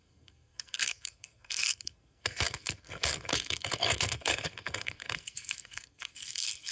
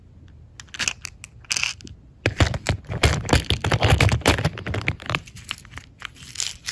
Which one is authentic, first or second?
second